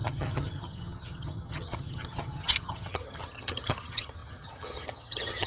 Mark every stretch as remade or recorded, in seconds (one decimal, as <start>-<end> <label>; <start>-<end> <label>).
0.0-5.5 remade